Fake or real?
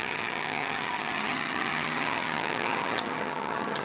fake